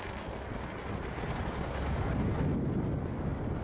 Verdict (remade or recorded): recorded